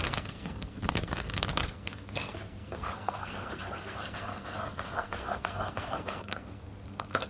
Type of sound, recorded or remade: remade